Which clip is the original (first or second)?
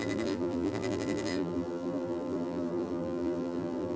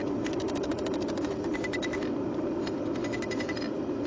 second